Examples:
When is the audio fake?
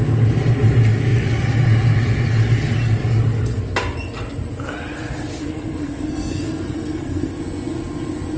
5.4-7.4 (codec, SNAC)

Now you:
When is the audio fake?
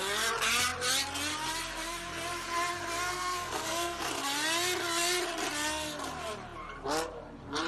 3.1-4.1 (codec, SNAC)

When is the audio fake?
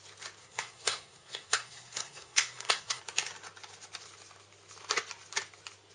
0.4-3.0 (codec, SNAC)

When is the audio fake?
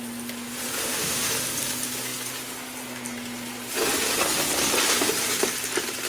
0.8-1.3 (autoencoder, DAC-VAE)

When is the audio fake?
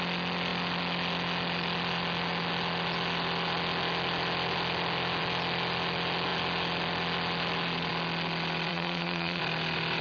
8.7-9.4 (vocoder, Vocos)